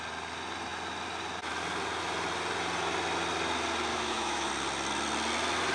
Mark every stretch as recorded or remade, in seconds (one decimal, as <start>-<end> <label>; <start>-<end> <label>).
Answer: 0.0-3.9 recorded; 3.9-4.5 remade; 4.5-5.7 recorded